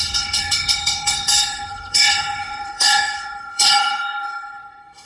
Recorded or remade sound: remade